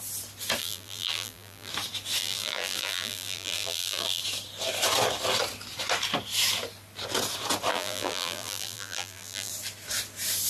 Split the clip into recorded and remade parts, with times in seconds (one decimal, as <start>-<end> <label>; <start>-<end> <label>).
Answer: 0.0-0.6 recorded; 0.6-1.7 remade; 1.7-2.2 recorded; 2.2-4.2 remade; 4.2-7.7 recorded; 7.7-9.5 remade; 9.5-10.5 recorded